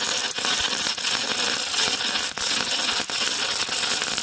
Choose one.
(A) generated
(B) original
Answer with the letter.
B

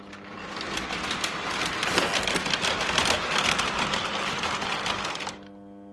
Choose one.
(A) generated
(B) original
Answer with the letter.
B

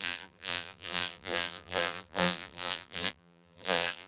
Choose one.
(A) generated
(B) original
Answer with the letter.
A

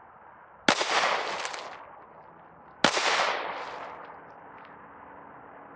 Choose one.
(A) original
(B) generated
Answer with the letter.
A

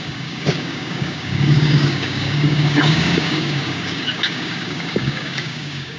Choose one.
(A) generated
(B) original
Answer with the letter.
A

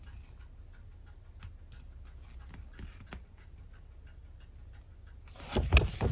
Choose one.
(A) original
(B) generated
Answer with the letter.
A